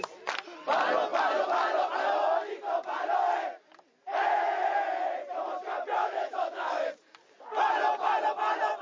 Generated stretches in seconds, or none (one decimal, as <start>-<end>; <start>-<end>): 6.0-6.9